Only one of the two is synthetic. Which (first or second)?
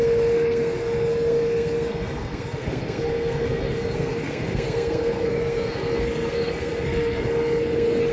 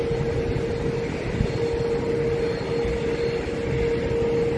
first